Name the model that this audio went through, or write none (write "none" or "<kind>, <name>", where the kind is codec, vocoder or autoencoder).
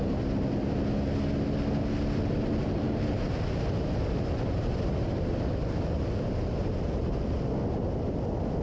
none